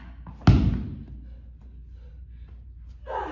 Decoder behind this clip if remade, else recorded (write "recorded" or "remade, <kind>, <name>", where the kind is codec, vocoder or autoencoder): recorded